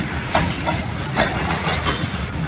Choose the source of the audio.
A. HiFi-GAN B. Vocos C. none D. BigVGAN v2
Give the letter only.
B